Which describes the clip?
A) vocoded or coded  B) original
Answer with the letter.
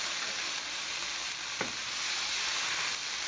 B